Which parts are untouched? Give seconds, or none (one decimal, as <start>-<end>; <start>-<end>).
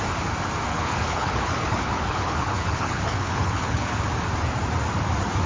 0.0-0.7; 4.0-5.5